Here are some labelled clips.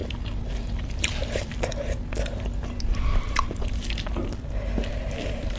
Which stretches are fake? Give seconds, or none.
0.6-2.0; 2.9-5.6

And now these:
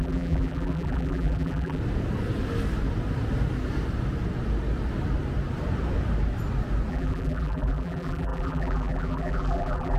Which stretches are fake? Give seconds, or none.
0.0-1.8; 6.9-10.0